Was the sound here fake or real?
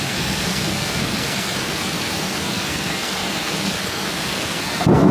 fake